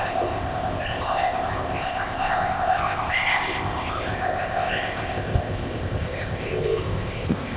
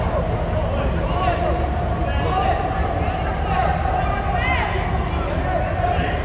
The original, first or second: second